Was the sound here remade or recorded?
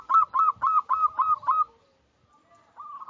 recorded